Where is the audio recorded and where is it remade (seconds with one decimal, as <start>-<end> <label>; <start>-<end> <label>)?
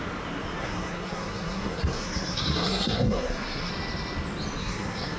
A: 0.0-0.6 recorded; 0.6-3.7 remade; 3.7-4.6 recorded; 4.6-5.2 remade